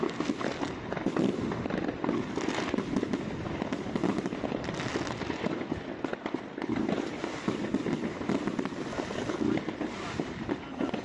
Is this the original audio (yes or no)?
yes